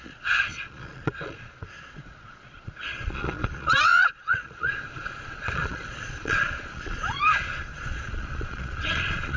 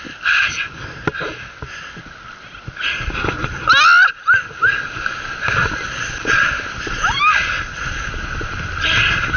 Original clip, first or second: second